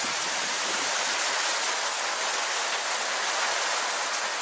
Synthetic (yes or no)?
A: no